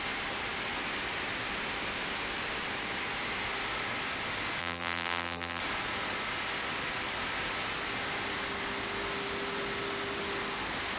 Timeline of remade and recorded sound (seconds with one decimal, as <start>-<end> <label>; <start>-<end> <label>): 0.0-4.6 recorded; 4.6-5.6 remade; 5.6-11.0 recorded